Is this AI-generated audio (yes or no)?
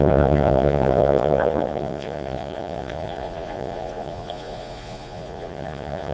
yes